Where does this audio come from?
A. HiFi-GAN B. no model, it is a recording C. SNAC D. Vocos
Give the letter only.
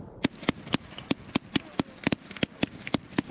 B